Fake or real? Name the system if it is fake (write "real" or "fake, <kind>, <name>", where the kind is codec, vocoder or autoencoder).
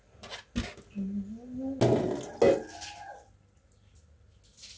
real